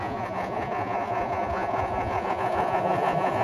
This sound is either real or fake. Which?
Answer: fake